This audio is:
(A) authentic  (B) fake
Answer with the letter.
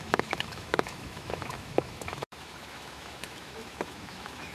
B